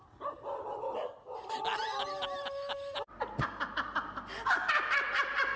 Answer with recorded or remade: recorded